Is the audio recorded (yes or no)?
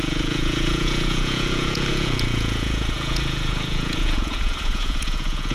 no